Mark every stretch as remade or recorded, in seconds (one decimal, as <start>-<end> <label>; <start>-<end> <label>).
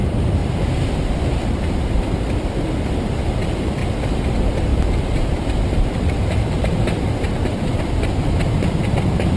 0.0-0.4 recorded; 0.4-1.2 remade; 1.2-3.8 recorded; 3.8-4.3 remade; 4.3-4.7 recorded; 4.7-7.3 remade; 7.3-9.4 recorded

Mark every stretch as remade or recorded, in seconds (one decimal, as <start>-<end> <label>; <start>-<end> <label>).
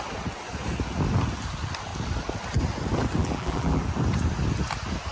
0.0-3.2 recorded; 3.2-3.8 remade; 3.8-5.1 recorded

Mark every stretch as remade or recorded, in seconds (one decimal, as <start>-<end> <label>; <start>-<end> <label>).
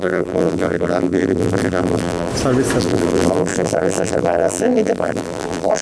0.0-2.3 remade; 2.3-2.8 recorded; 2.8-5.8 remade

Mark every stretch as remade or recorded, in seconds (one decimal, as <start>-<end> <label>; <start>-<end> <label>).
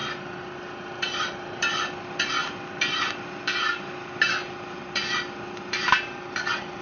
0.0-6.8 remade